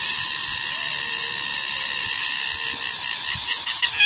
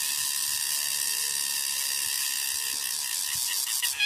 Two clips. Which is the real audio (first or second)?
second